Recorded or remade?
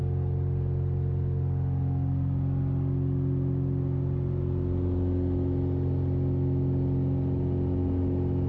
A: recorded